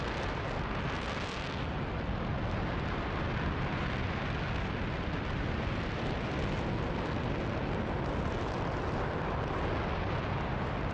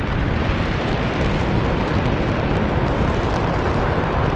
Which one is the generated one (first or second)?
second